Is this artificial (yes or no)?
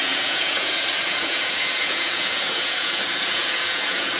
yes